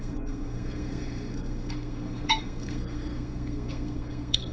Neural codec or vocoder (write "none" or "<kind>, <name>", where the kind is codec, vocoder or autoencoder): codec, SNAC